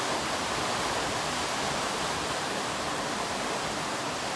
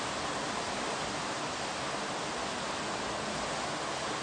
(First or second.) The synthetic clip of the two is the first